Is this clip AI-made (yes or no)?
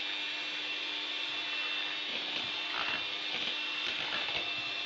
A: no